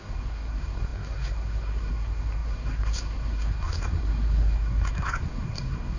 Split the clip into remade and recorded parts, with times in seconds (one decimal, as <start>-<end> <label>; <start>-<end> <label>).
0.0-6.0 remade

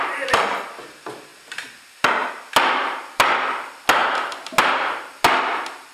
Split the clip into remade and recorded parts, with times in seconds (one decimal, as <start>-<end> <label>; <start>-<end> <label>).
0.0-5.9 recorded

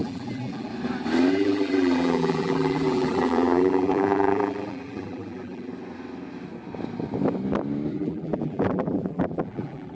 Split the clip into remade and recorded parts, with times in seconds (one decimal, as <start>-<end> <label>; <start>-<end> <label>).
0.0-0.7 remade; 0.7-1.3 recorded; 1.3-5.7 remade; 5.7-7.9 recorded; 7.9-9.9 remade

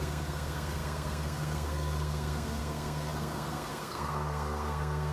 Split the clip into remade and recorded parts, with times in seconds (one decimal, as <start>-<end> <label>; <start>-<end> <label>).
0.0-5.1 remade

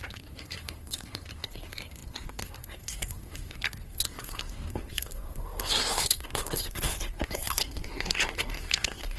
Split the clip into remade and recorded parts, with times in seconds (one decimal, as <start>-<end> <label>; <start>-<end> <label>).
0.0-9.2 remade

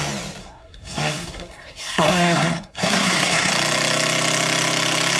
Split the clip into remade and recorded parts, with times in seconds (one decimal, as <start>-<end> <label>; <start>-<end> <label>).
0.0-0.4 recorded; 0.4-3.5 remade; 3.5-5.2 recorded

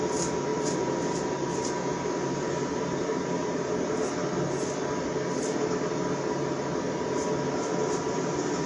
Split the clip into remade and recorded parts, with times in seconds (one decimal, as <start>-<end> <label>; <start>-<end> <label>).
0.0-0.5 recorded; 0.5-3.9 remade; 3.9-8.7 recorded

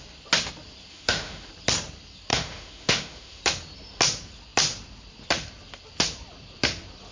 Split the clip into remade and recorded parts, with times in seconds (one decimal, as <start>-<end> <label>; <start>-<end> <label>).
0.0-0.9 recorded; 0.9-1.5 remade; 1.5-2.3 recorded; 2.3-3.4 remade; 3.4-7.1 recorded